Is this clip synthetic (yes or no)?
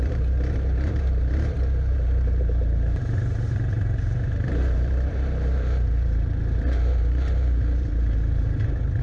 yes